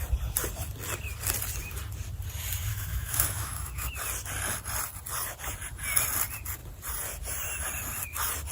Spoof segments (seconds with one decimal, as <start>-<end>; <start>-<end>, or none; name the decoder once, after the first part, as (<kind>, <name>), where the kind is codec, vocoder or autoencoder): 2.7-3.9 (autoencoder, DAC-VAE)